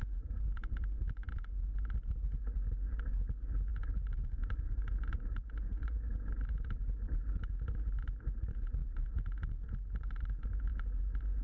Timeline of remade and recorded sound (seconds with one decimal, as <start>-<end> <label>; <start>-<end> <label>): 0.0-3.7 recorded; 3.7-7.5 remade; 7.5-8.8 recorded; 8.8-10.7 remade; 10.7-11.4 recorded

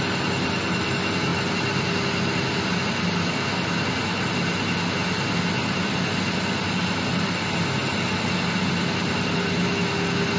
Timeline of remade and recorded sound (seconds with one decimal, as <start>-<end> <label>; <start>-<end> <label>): 0.0-10.4 recorded

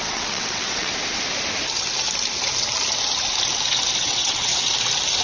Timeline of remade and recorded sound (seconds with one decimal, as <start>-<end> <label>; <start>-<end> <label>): 0.0-0.9 remade; 0.9-4.0 recorded; 4.0-4.5 remade; 4.5-5.2 recorded

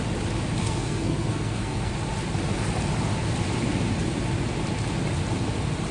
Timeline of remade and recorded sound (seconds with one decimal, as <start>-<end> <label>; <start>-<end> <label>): 0.0-0.6 recorded; 0.6-1.9 remade; 1.9-5.9 recorded

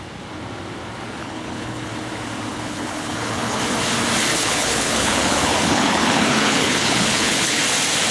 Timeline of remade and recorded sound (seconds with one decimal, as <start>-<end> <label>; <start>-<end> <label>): 0.0-1.2 recorded; 1.2-1.9 remade; 1.9-2.5 recorded; 2.5-3.6 remade; 3.6-4.4 recorded; 4.4-7.6 remade; 7.6-8.1 recorded

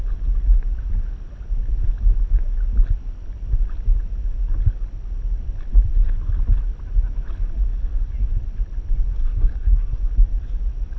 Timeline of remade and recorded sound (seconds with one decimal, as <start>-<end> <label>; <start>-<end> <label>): 0.0-9.2 recorded; 9.2-10.0 remade; 10.0-11.0 recorded